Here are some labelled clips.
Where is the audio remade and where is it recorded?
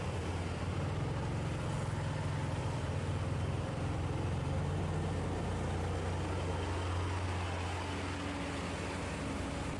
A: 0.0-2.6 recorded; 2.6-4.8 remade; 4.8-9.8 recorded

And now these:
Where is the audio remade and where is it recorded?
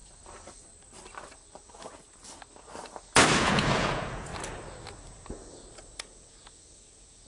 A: 0.0-3.4 recorded; 3.4-4.3 remade; 4.3-6.0 recorded; 6.0-7.3 remade